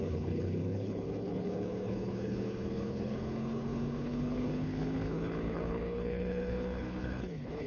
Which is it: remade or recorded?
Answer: remade